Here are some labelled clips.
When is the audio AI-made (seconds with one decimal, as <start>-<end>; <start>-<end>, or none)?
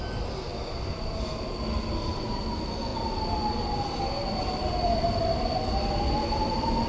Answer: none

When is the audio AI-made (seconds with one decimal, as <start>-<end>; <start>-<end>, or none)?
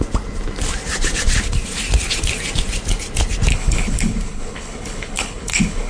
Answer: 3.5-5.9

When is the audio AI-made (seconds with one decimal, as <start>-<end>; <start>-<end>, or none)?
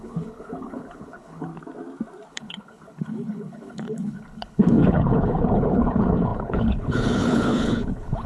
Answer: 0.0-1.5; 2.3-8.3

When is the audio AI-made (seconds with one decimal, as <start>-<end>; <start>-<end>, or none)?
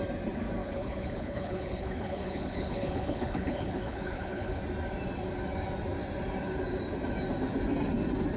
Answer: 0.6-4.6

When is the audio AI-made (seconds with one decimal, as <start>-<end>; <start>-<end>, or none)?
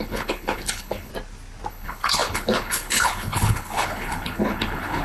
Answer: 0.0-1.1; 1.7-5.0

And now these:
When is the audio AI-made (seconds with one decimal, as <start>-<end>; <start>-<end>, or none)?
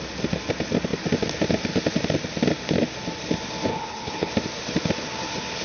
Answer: 3.7-4.3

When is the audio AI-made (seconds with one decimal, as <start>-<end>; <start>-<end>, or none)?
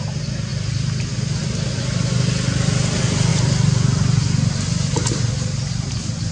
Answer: none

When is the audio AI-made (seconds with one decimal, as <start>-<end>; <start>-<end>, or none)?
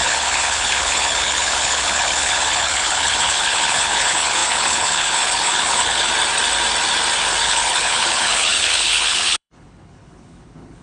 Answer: 0.0-6.1; 7.4-10.8